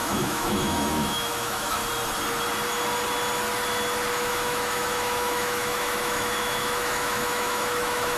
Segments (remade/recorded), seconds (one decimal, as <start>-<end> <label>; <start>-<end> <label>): 0.0-1.8 remade; 1.8-4.1 recorded; 4.1-8.2 remade